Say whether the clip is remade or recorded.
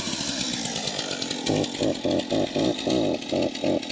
recorded